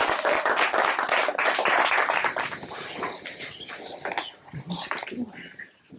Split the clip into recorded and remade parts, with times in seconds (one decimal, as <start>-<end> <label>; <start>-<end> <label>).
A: 0.0-1.3 recorded; 1.3-4.1 remade; 4.1-4.5 recorded; 4.5-6.0 remade